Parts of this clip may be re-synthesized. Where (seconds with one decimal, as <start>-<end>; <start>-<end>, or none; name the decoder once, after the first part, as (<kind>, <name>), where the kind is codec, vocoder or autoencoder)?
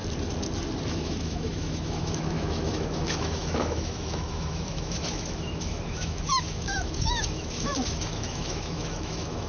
0.9-9.5 (autoencoder, DAC-VAE)